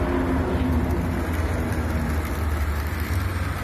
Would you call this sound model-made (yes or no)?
no